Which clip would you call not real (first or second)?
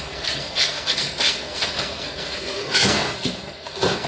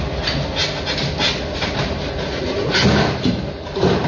first